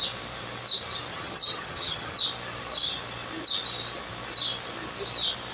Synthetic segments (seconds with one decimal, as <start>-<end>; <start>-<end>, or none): 1.1-2.2